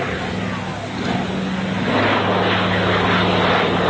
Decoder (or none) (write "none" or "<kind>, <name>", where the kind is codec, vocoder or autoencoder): none